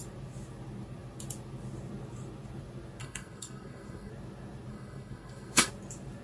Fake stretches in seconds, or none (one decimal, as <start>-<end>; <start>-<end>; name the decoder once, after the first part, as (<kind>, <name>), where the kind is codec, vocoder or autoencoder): 3.0-4.1 (codec, SNAC); 4.7-5.7